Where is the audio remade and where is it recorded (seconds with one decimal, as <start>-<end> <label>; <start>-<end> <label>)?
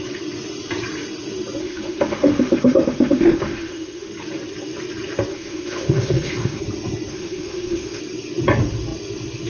0.0-1.6 recorded; 1.6-4.1 remade; 4.1-5.3 recorded; 5.3-6.6 remade; 6.6-7.1 recorded; 7.1-8.0 remade; 8.0-9.5 recorded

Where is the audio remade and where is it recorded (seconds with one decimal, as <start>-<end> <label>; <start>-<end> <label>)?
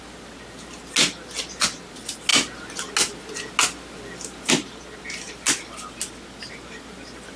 0.0-7.4 recorded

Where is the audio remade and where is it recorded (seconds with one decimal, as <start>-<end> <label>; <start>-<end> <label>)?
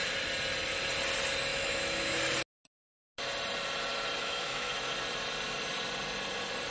0.0-1.5 recorded; 1.5-2.2 remade; 2.2-4.2 recorded; 4.2-4.7 remade; 4.7-6.7 recorded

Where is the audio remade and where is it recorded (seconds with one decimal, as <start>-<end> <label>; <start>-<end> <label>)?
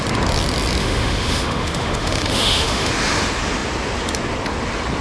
0.0-0.8 recorded; 0.8-2.9 remade; 2.9-5.0 recorded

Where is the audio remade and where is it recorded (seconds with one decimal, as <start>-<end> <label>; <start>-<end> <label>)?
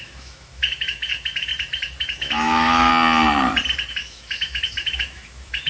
0.0-1.5 remade; 1.5-2.0 recorded; 2.0-2.9 remade; 2.9-3.9 recorded; 3.9-5.7 remade